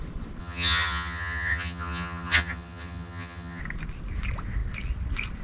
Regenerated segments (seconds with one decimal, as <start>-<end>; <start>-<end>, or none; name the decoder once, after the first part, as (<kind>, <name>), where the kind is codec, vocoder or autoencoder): 0.4-3.6 (vocoder, HiFi-GAN)